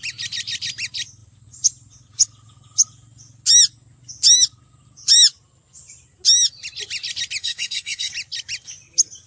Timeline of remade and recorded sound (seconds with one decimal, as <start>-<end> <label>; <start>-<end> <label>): 0.0-7.4 recorded; 7.4-8.1 remade; 8.1-9.3 recorded